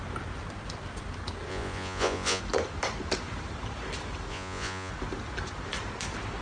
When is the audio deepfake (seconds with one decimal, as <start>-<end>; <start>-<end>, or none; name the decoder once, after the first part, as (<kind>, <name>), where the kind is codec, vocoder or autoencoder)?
1.5-2.4 (vocoder, Vocos); 4.3-4.9